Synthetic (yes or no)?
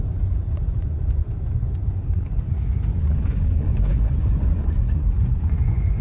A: yes